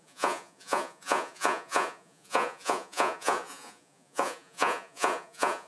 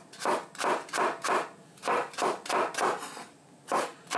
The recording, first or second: second